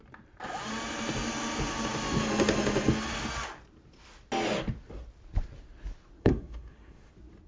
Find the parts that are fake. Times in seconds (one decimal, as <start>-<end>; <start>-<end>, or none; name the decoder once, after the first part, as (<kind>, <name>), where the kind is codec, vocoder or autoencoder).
6.2-7.1 (codec, SNAC)